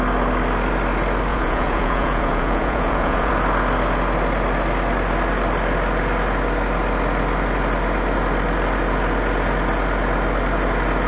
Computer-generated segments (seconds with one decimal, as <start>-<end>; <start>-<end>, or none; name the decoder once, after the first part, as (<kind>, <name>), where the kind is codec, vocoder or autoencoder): 1.3-3.3 (vocoder, Vocos)